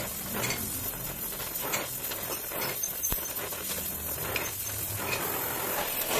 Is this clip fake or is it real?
real